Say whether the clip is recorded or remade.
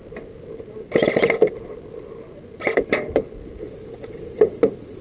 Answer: recorded